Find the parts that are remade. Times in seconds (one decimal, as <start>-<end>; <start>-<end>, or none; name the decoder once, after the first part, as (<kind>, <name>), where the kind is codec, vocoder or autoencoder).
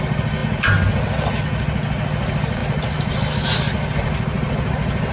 none